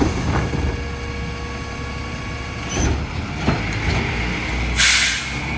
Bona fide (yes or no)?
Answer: yes